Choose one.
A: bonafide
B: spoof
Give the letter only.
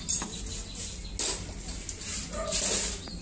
A